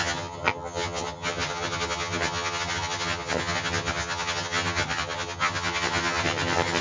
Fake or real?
fake